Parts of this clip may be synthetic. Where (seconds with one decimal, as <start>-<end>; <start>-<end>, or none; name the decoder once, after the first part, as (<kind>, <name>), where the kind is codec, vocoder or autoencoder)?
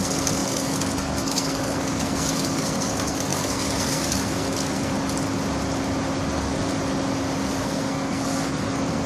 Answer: 0.0-4.9 (codec, SNAC); 6.3-6.7; 7.6-9.1